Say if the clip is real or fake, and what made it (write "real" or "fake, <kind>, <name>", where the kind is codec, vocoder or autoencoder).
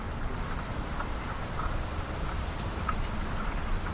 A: real